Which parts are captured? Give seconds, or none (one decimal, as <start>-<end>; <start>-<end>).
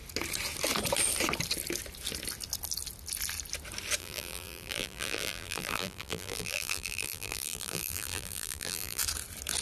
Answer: 0.0-4.0; 9.0-9.6